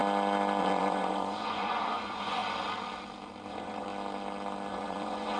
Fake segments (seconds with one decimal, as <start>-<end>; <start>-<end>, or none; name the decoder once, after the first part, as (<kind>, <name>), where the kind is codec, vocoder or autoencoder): 0.6-2.4 (vocoder, Vocos); 3.5-3.9; 4.7-5.4